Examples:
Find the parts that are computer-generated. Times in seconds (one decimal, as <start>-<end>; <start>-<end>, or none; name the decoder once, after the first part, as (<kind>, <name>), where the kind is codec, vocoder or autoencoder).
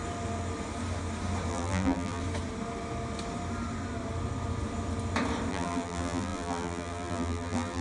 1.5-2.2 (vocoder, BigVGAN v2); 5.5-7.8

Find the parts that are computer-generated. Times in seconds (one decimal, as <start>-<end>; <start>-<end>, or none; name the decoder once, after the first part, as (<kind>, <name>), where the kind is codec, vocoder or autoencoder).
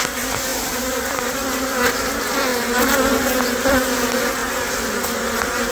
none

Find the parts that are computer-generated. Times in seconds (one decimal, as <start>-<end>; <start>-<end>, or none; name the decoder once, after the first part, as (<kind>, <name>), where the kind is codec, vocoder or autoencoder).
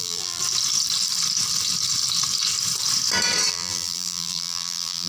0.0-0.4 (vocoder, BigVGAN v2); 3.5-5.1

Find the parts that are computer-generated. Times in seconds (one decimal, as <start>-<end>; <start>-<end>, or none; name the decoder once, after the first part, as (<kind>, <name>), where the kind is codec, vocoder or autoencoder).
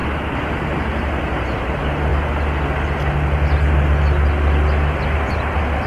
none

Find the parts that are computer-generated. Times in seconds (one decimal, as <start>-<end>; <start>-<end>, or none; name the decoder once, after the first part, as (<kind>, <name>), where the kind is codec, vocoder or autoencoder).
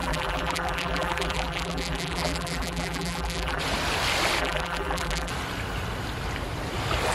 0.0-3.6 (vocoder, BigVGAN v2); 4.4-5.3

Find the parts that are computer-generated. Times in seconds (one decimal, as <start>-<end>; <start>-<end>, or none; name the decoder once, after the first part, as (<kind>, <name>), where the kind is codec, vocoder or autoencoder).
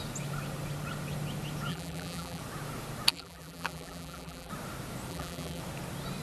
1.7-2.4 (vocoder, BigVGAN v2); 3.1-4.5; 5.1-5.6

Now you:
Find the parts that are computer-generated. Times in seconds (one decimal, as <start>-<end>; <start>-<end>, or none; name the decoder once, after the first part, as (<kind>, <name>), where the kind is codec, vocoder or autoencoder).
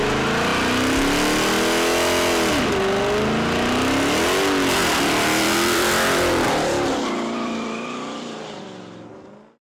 4.8-8.6 (vocoder, BigVGAN v2)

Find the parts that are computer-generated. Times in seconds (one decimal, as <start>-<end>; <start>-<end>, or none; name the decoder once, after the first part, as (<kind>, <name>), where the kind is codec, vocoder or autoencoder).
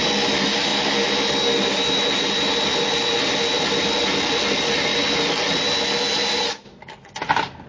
none